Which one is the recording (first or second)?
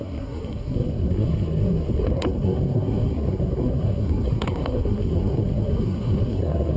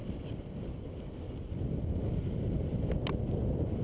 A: second